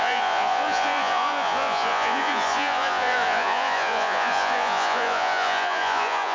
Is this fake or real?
fake